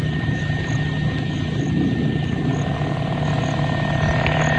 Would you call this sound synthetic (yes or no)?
no